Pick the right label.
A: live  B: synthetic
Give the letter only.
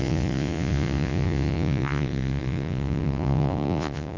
B